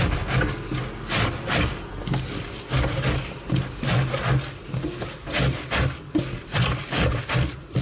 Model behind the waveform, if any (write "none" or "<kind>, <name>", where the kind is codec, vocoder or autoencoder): none